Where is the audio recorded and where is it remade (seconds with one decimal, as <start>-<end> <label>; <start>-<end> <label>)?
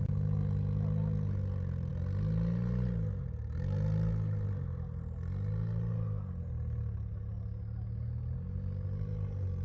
0.0-9.6 recorded